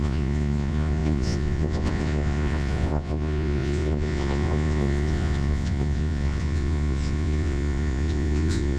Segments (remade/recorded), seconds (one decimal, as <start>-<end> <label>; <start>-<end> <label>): 0.0-8.8 remade